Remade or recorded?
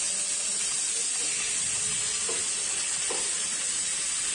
recorded